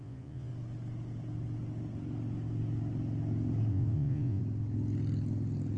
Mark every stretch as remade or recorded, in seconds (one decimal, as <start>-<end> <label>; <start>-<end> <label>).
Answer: 0.0-0.5 remade; 0.5-3.7 recorded; 3.7-4.4 remade; 4.4-5.8 recorded